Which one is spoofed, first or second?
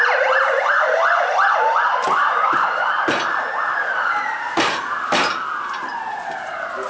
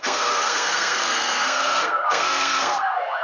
second